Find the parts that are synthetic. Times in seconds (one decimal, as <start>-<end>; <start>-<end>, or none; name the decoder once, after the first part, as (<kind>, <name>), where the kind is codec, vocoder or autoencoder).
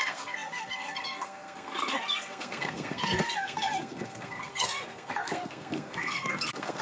0.0-6.8 (codec, SNAC)